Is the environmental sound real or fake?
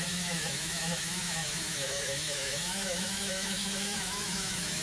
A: fake